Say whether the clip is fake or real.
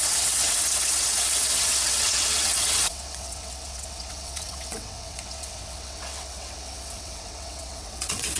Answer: fake